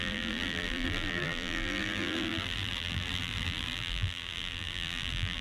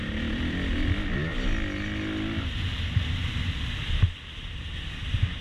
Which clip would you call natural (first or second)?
second